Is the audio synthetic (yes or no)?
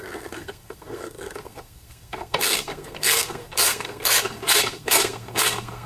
yes